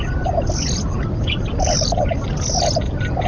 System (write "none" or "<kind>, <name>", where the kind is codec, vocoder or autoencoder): none